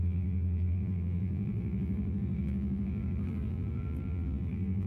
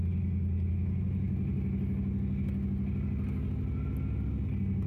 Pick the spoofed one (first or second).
first